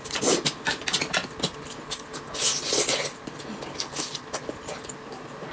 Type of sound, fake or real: real